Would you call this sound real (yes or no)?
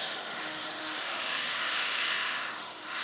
no